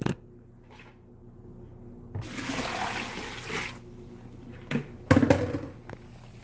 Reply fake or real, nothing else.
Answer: real